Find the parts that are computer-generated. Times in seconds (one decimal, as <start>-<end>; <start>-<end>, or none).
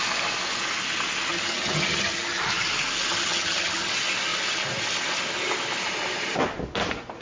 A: 1.3-2.4; 3.1-3.9